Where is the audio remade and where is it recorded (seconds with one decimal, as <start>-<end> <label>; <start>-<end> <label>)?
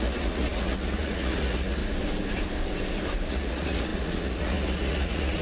0.0-1.8 remade; 1.8-3.3 recorded; 3.3-5.4 remade